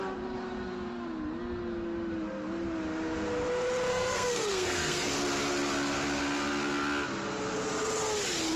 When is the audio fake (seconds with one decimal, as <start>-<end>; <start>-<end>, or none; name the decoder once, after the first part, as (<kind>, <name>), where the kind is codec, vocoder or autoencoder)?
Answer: 3.9-5.1 (codec, SNAC)